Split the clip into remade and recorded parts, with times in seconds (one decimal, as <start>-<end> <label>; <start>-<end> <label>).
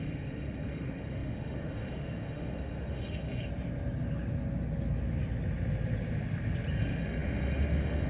0.0-3.5 remade; 3.5-6.7 recorded; 6.7-8.1 remade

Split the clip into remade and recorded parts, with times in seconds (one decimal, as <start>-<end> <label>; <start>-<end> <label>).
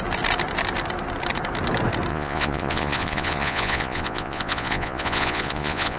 0.0-2.1 recorded; 2.1-6.0 remade